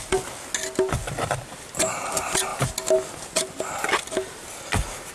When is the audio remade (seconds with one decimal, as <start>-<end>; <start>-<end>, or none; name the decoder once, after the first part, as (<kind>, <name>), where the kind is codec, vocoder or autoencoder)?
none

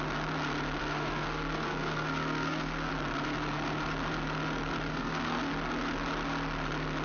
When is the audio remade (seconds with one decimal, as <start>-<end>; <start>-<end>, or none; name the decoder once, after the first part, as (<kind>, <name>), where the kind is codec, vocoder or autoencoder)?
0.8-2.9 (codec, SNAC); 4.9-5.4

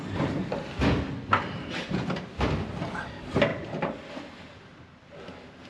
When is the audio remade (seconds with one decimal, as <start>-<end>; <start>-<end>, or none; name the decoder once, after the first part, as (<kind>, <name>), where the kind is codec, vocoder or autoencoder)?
none